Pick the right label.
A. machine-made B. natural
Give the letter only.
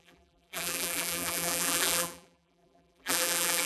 A